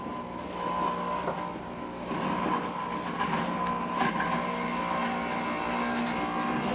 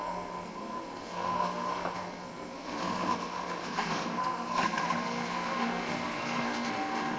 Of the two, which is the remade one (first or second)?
second